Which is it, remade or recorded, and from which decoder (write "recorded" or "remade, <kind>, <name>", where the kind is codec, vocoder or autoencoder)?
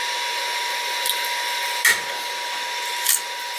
recorded